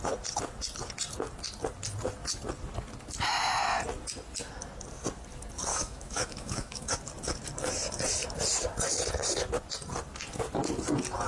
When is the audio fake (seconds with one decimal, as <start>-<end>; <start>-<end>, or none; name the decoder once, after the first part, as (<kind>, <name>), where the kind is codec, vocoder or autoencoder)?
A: 5.7-6.9 (autoencoder, DAC-VAE)